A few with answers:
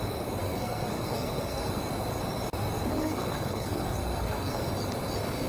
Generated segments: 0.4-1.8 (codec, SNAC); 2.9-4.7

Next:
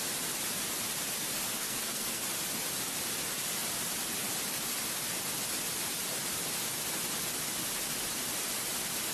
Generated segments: 1.6-2.2 (codec, SNAC)

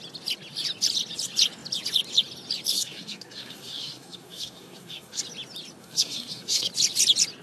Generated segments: 2.7-5.2 (codec, SNAC); 5.8-6.7

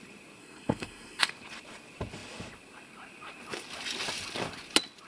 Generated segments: 0.4-1.3 (codec, SNAC)

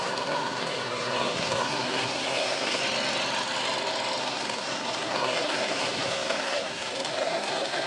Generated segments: 0.0-2.8 (codec, SNAC); 4.2-7.9

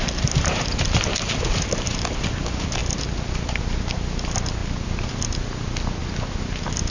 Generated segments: none